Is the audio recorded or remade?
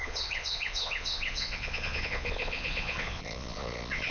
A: remade